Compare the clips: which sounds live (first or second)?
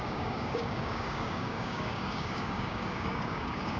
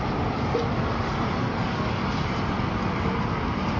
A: second